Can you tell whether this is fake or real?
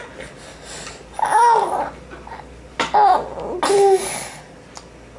real